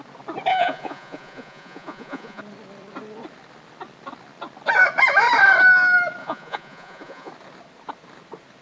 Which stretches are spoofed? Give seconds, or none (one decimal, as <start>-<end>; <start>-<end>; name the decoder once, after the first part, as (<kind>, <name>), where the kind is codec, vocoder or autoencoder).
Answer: 0.5-2.4 (vocoder, Vocos); 6.2-7.3